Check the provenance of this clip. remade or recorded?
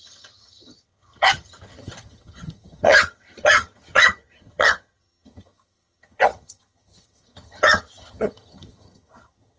remade